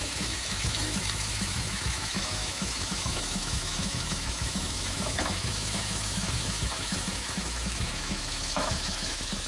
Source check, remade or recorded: remade